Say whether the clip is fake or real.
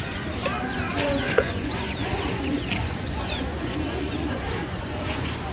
fake